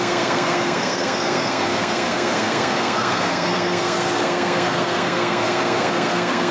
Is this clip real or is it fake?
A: fake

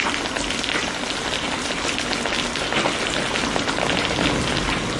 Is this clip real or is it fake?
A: real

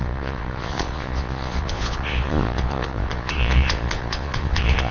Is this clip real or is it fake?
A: fake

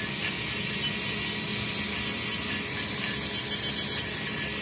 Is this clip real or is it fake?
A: real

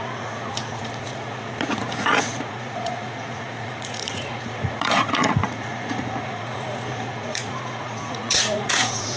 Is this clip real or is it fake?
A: fake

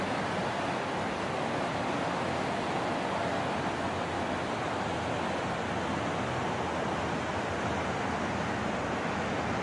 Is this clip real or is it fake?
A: real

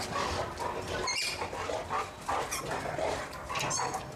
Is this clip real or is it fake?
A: fake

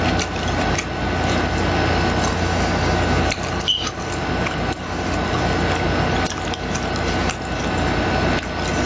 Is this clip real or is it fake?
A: real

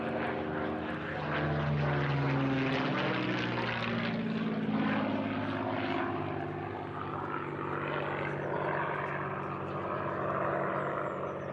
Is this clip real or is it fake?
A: real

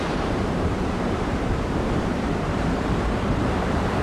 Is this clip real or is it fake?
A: fake